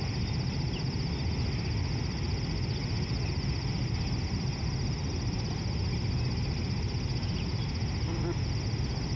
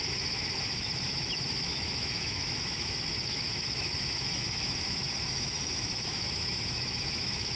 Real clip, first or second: first